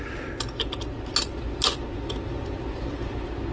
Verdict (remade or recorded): recorded